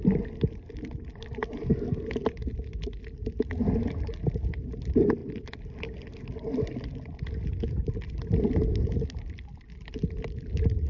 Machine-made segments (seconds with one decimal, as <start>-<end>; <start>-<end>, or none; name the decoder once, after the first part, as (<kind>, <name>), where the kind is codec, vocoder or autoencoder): none